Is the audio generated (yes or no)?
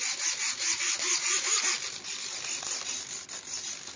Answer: no